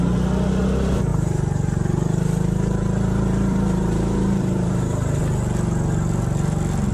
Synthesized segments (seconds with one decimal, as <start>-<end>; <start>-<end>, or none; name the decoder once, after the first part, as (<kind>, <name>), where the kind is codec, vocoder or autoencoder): 1.1-5.2 (vocoder, BigVGAN v2)